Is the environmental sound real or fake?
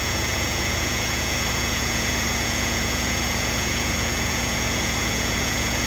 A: fake